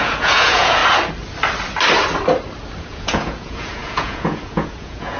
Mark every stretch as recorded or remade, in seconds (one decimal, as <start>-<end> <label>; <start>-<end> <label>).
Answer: 0.0-0.8 remade; 0.8-2.8 recorded; 2.8-5.2 remade